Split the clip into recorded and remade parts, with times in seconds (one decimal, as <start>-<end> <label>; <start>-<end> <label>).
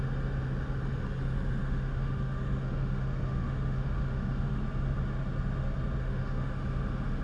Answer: 0.0-1.6 recorded; 1.6-4.6 remade; 4.6-6.0 recorded; 6.0-6.5 remade; 6.5-7.2 recorded